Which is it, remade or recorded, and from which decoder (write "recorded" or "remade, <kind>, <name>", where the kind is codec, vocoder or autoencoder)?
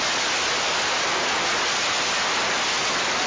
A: recorded